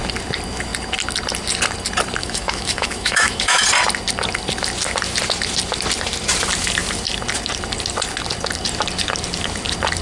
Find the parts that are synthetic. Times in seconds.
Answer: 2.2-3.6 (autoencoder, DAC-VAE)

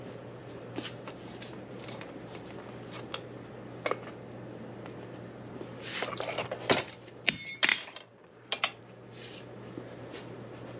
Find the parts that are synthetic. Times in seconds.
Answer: 0.4-2.1 (vocoder, BigVGAN v2); 7.7-8.8

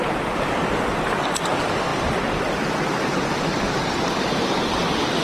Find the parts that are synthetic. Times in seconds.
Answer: none

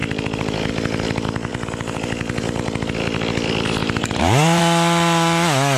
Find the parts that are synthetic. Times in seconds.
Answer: 3.8-4.6 (vocoder, BigVGAN v2)

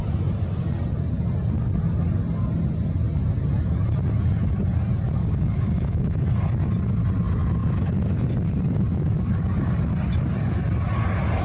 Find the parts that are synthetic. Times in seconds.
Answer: 5.2-6.2 (codec, DAC)

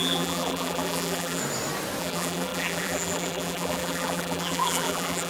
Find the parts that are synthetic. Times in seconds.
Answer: 0.0-1.4 (vocoder, BigVGAN v2); 2.0-5.3